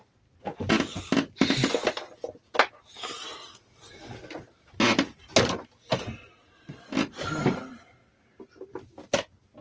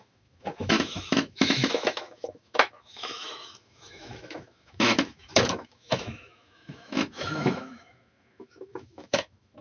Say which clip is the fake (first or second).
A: second